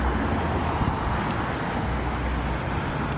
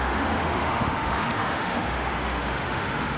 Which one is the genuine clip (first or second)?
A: first